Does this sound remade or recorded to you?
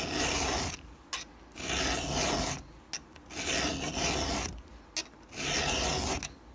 recorded